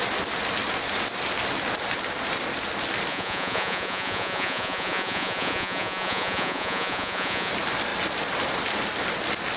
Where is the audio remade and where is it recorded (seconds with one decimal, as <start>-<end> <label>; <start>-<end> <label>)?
0.0-3.1 recorded; 3.1-7.5 remade; 7.5-9.6 recorded